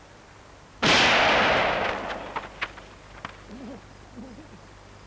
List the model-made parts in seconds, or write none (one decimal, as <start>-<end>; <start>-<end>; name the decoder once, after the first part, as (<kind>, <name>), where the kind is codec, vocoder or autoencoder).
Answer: none